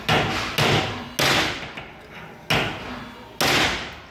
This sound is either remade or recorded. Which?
recorded